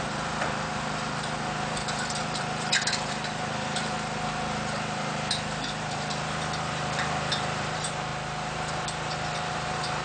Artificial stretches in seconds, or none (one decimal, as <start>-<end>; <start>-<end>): 0.0-10.0